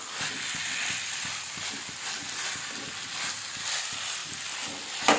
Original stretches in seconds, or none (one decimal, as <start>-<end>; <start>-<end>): 0.0-5.2